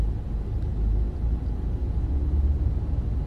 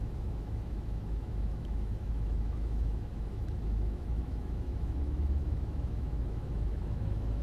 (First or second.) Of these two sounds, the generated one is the second